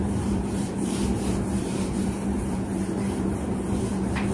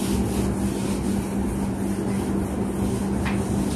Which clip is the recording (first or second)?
second